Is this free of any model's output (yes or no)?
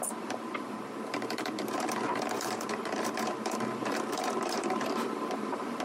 no